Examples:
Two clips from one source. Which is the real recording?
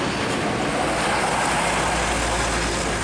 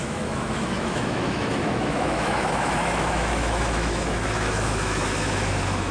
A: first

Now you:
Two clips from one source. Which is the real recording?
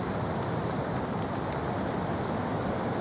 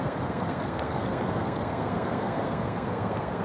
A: first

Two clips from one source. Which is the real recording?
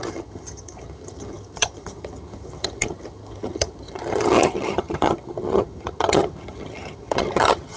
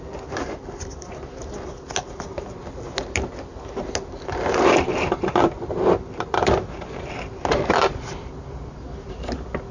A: second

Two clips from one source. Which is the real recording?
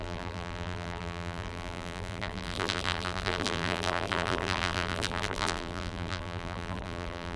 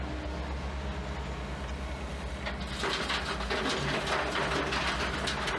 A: second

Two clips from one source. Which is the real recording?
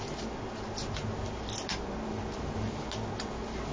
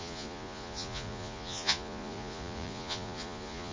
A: first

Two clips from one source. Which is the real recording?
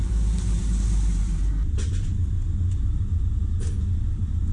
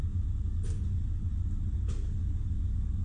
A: second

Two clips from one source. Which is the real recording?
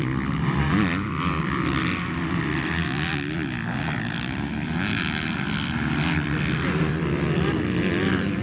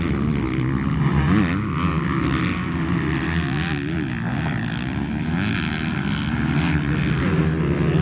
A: second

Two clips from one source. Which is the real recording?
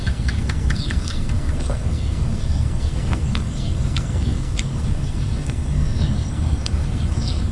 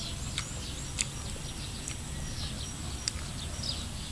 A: second